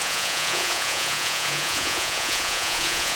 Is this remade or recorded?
remade